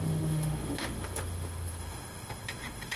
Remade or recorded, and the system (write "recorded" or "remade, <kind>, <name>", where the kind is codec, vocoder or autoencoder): remade, autoencoder, DAC-VAE